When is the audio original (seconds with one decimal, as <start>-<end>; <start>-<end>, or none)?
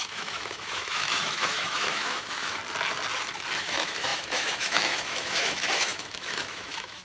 2.6-3.6